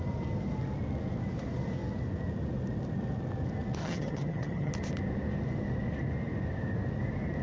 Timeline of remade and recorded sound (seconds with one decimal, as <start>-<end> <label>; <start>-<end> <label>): 0.0-3.8 recorded; 3.8-4.7 remade; 4.7-7.4 recorded